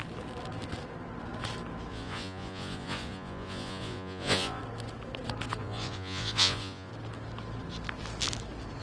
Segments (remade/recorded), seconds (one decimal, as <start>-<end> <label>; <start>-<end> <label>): 0.0-1.9 recorded; 1.9-4.6 remade; 4.6-5.6 recorded; 5.6-6.9 remade; 6.9-8.8 recorded